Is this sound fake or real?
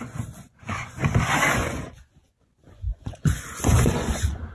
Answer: fake